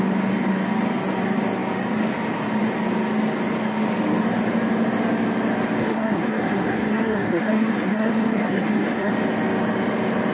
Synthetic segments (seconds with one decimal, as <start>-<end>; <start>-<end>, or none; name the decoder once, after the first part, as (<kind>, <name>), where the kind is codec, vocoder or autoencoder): 5.8-9.1 (codec, SNAC)